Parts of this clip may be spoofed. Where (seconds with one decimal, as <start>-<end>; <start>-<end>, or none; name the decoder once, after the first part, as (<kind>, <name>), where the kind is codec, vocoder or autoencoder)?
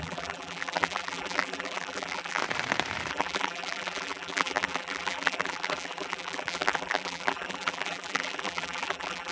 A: 0.0-2.4 (vocoder, BigVGAN v2); 3.1-9.3